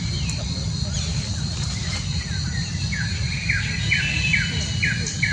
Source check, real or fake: real